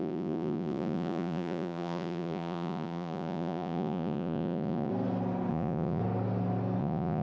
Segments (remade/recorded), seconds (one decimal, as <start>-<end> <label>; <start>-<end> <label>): 0.0-4.9 remade; 4.9-5.5 recorded; 5.5-6.0 remade; 6.0-6.8 recorded; 6.8-7.2 remade